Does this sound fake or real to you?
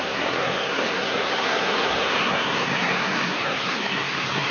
fake